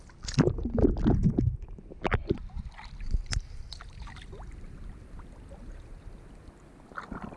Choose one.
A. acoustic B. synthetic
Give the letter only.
A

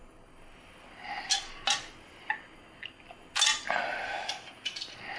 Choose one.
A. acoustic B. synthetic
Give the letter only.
A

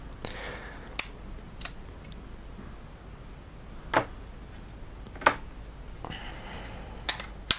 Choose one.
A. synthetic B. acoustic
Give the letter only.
B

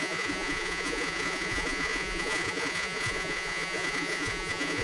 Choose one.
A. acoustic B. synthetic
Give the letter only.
B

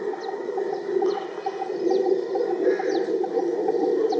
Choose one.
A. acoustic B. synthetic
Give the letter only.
A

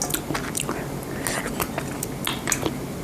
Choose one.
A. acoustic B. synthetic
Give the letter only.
A